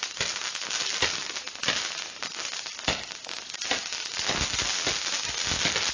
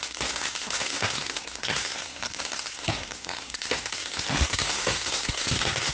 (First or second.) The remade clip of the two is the second